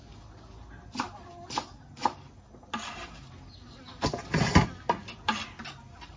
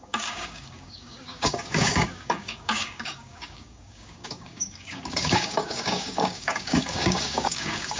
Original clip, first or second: first